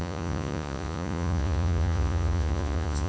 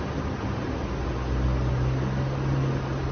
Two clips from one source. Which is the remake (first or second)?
first